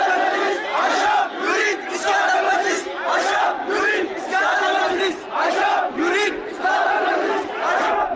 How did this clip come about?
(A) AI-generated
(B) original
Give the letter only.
B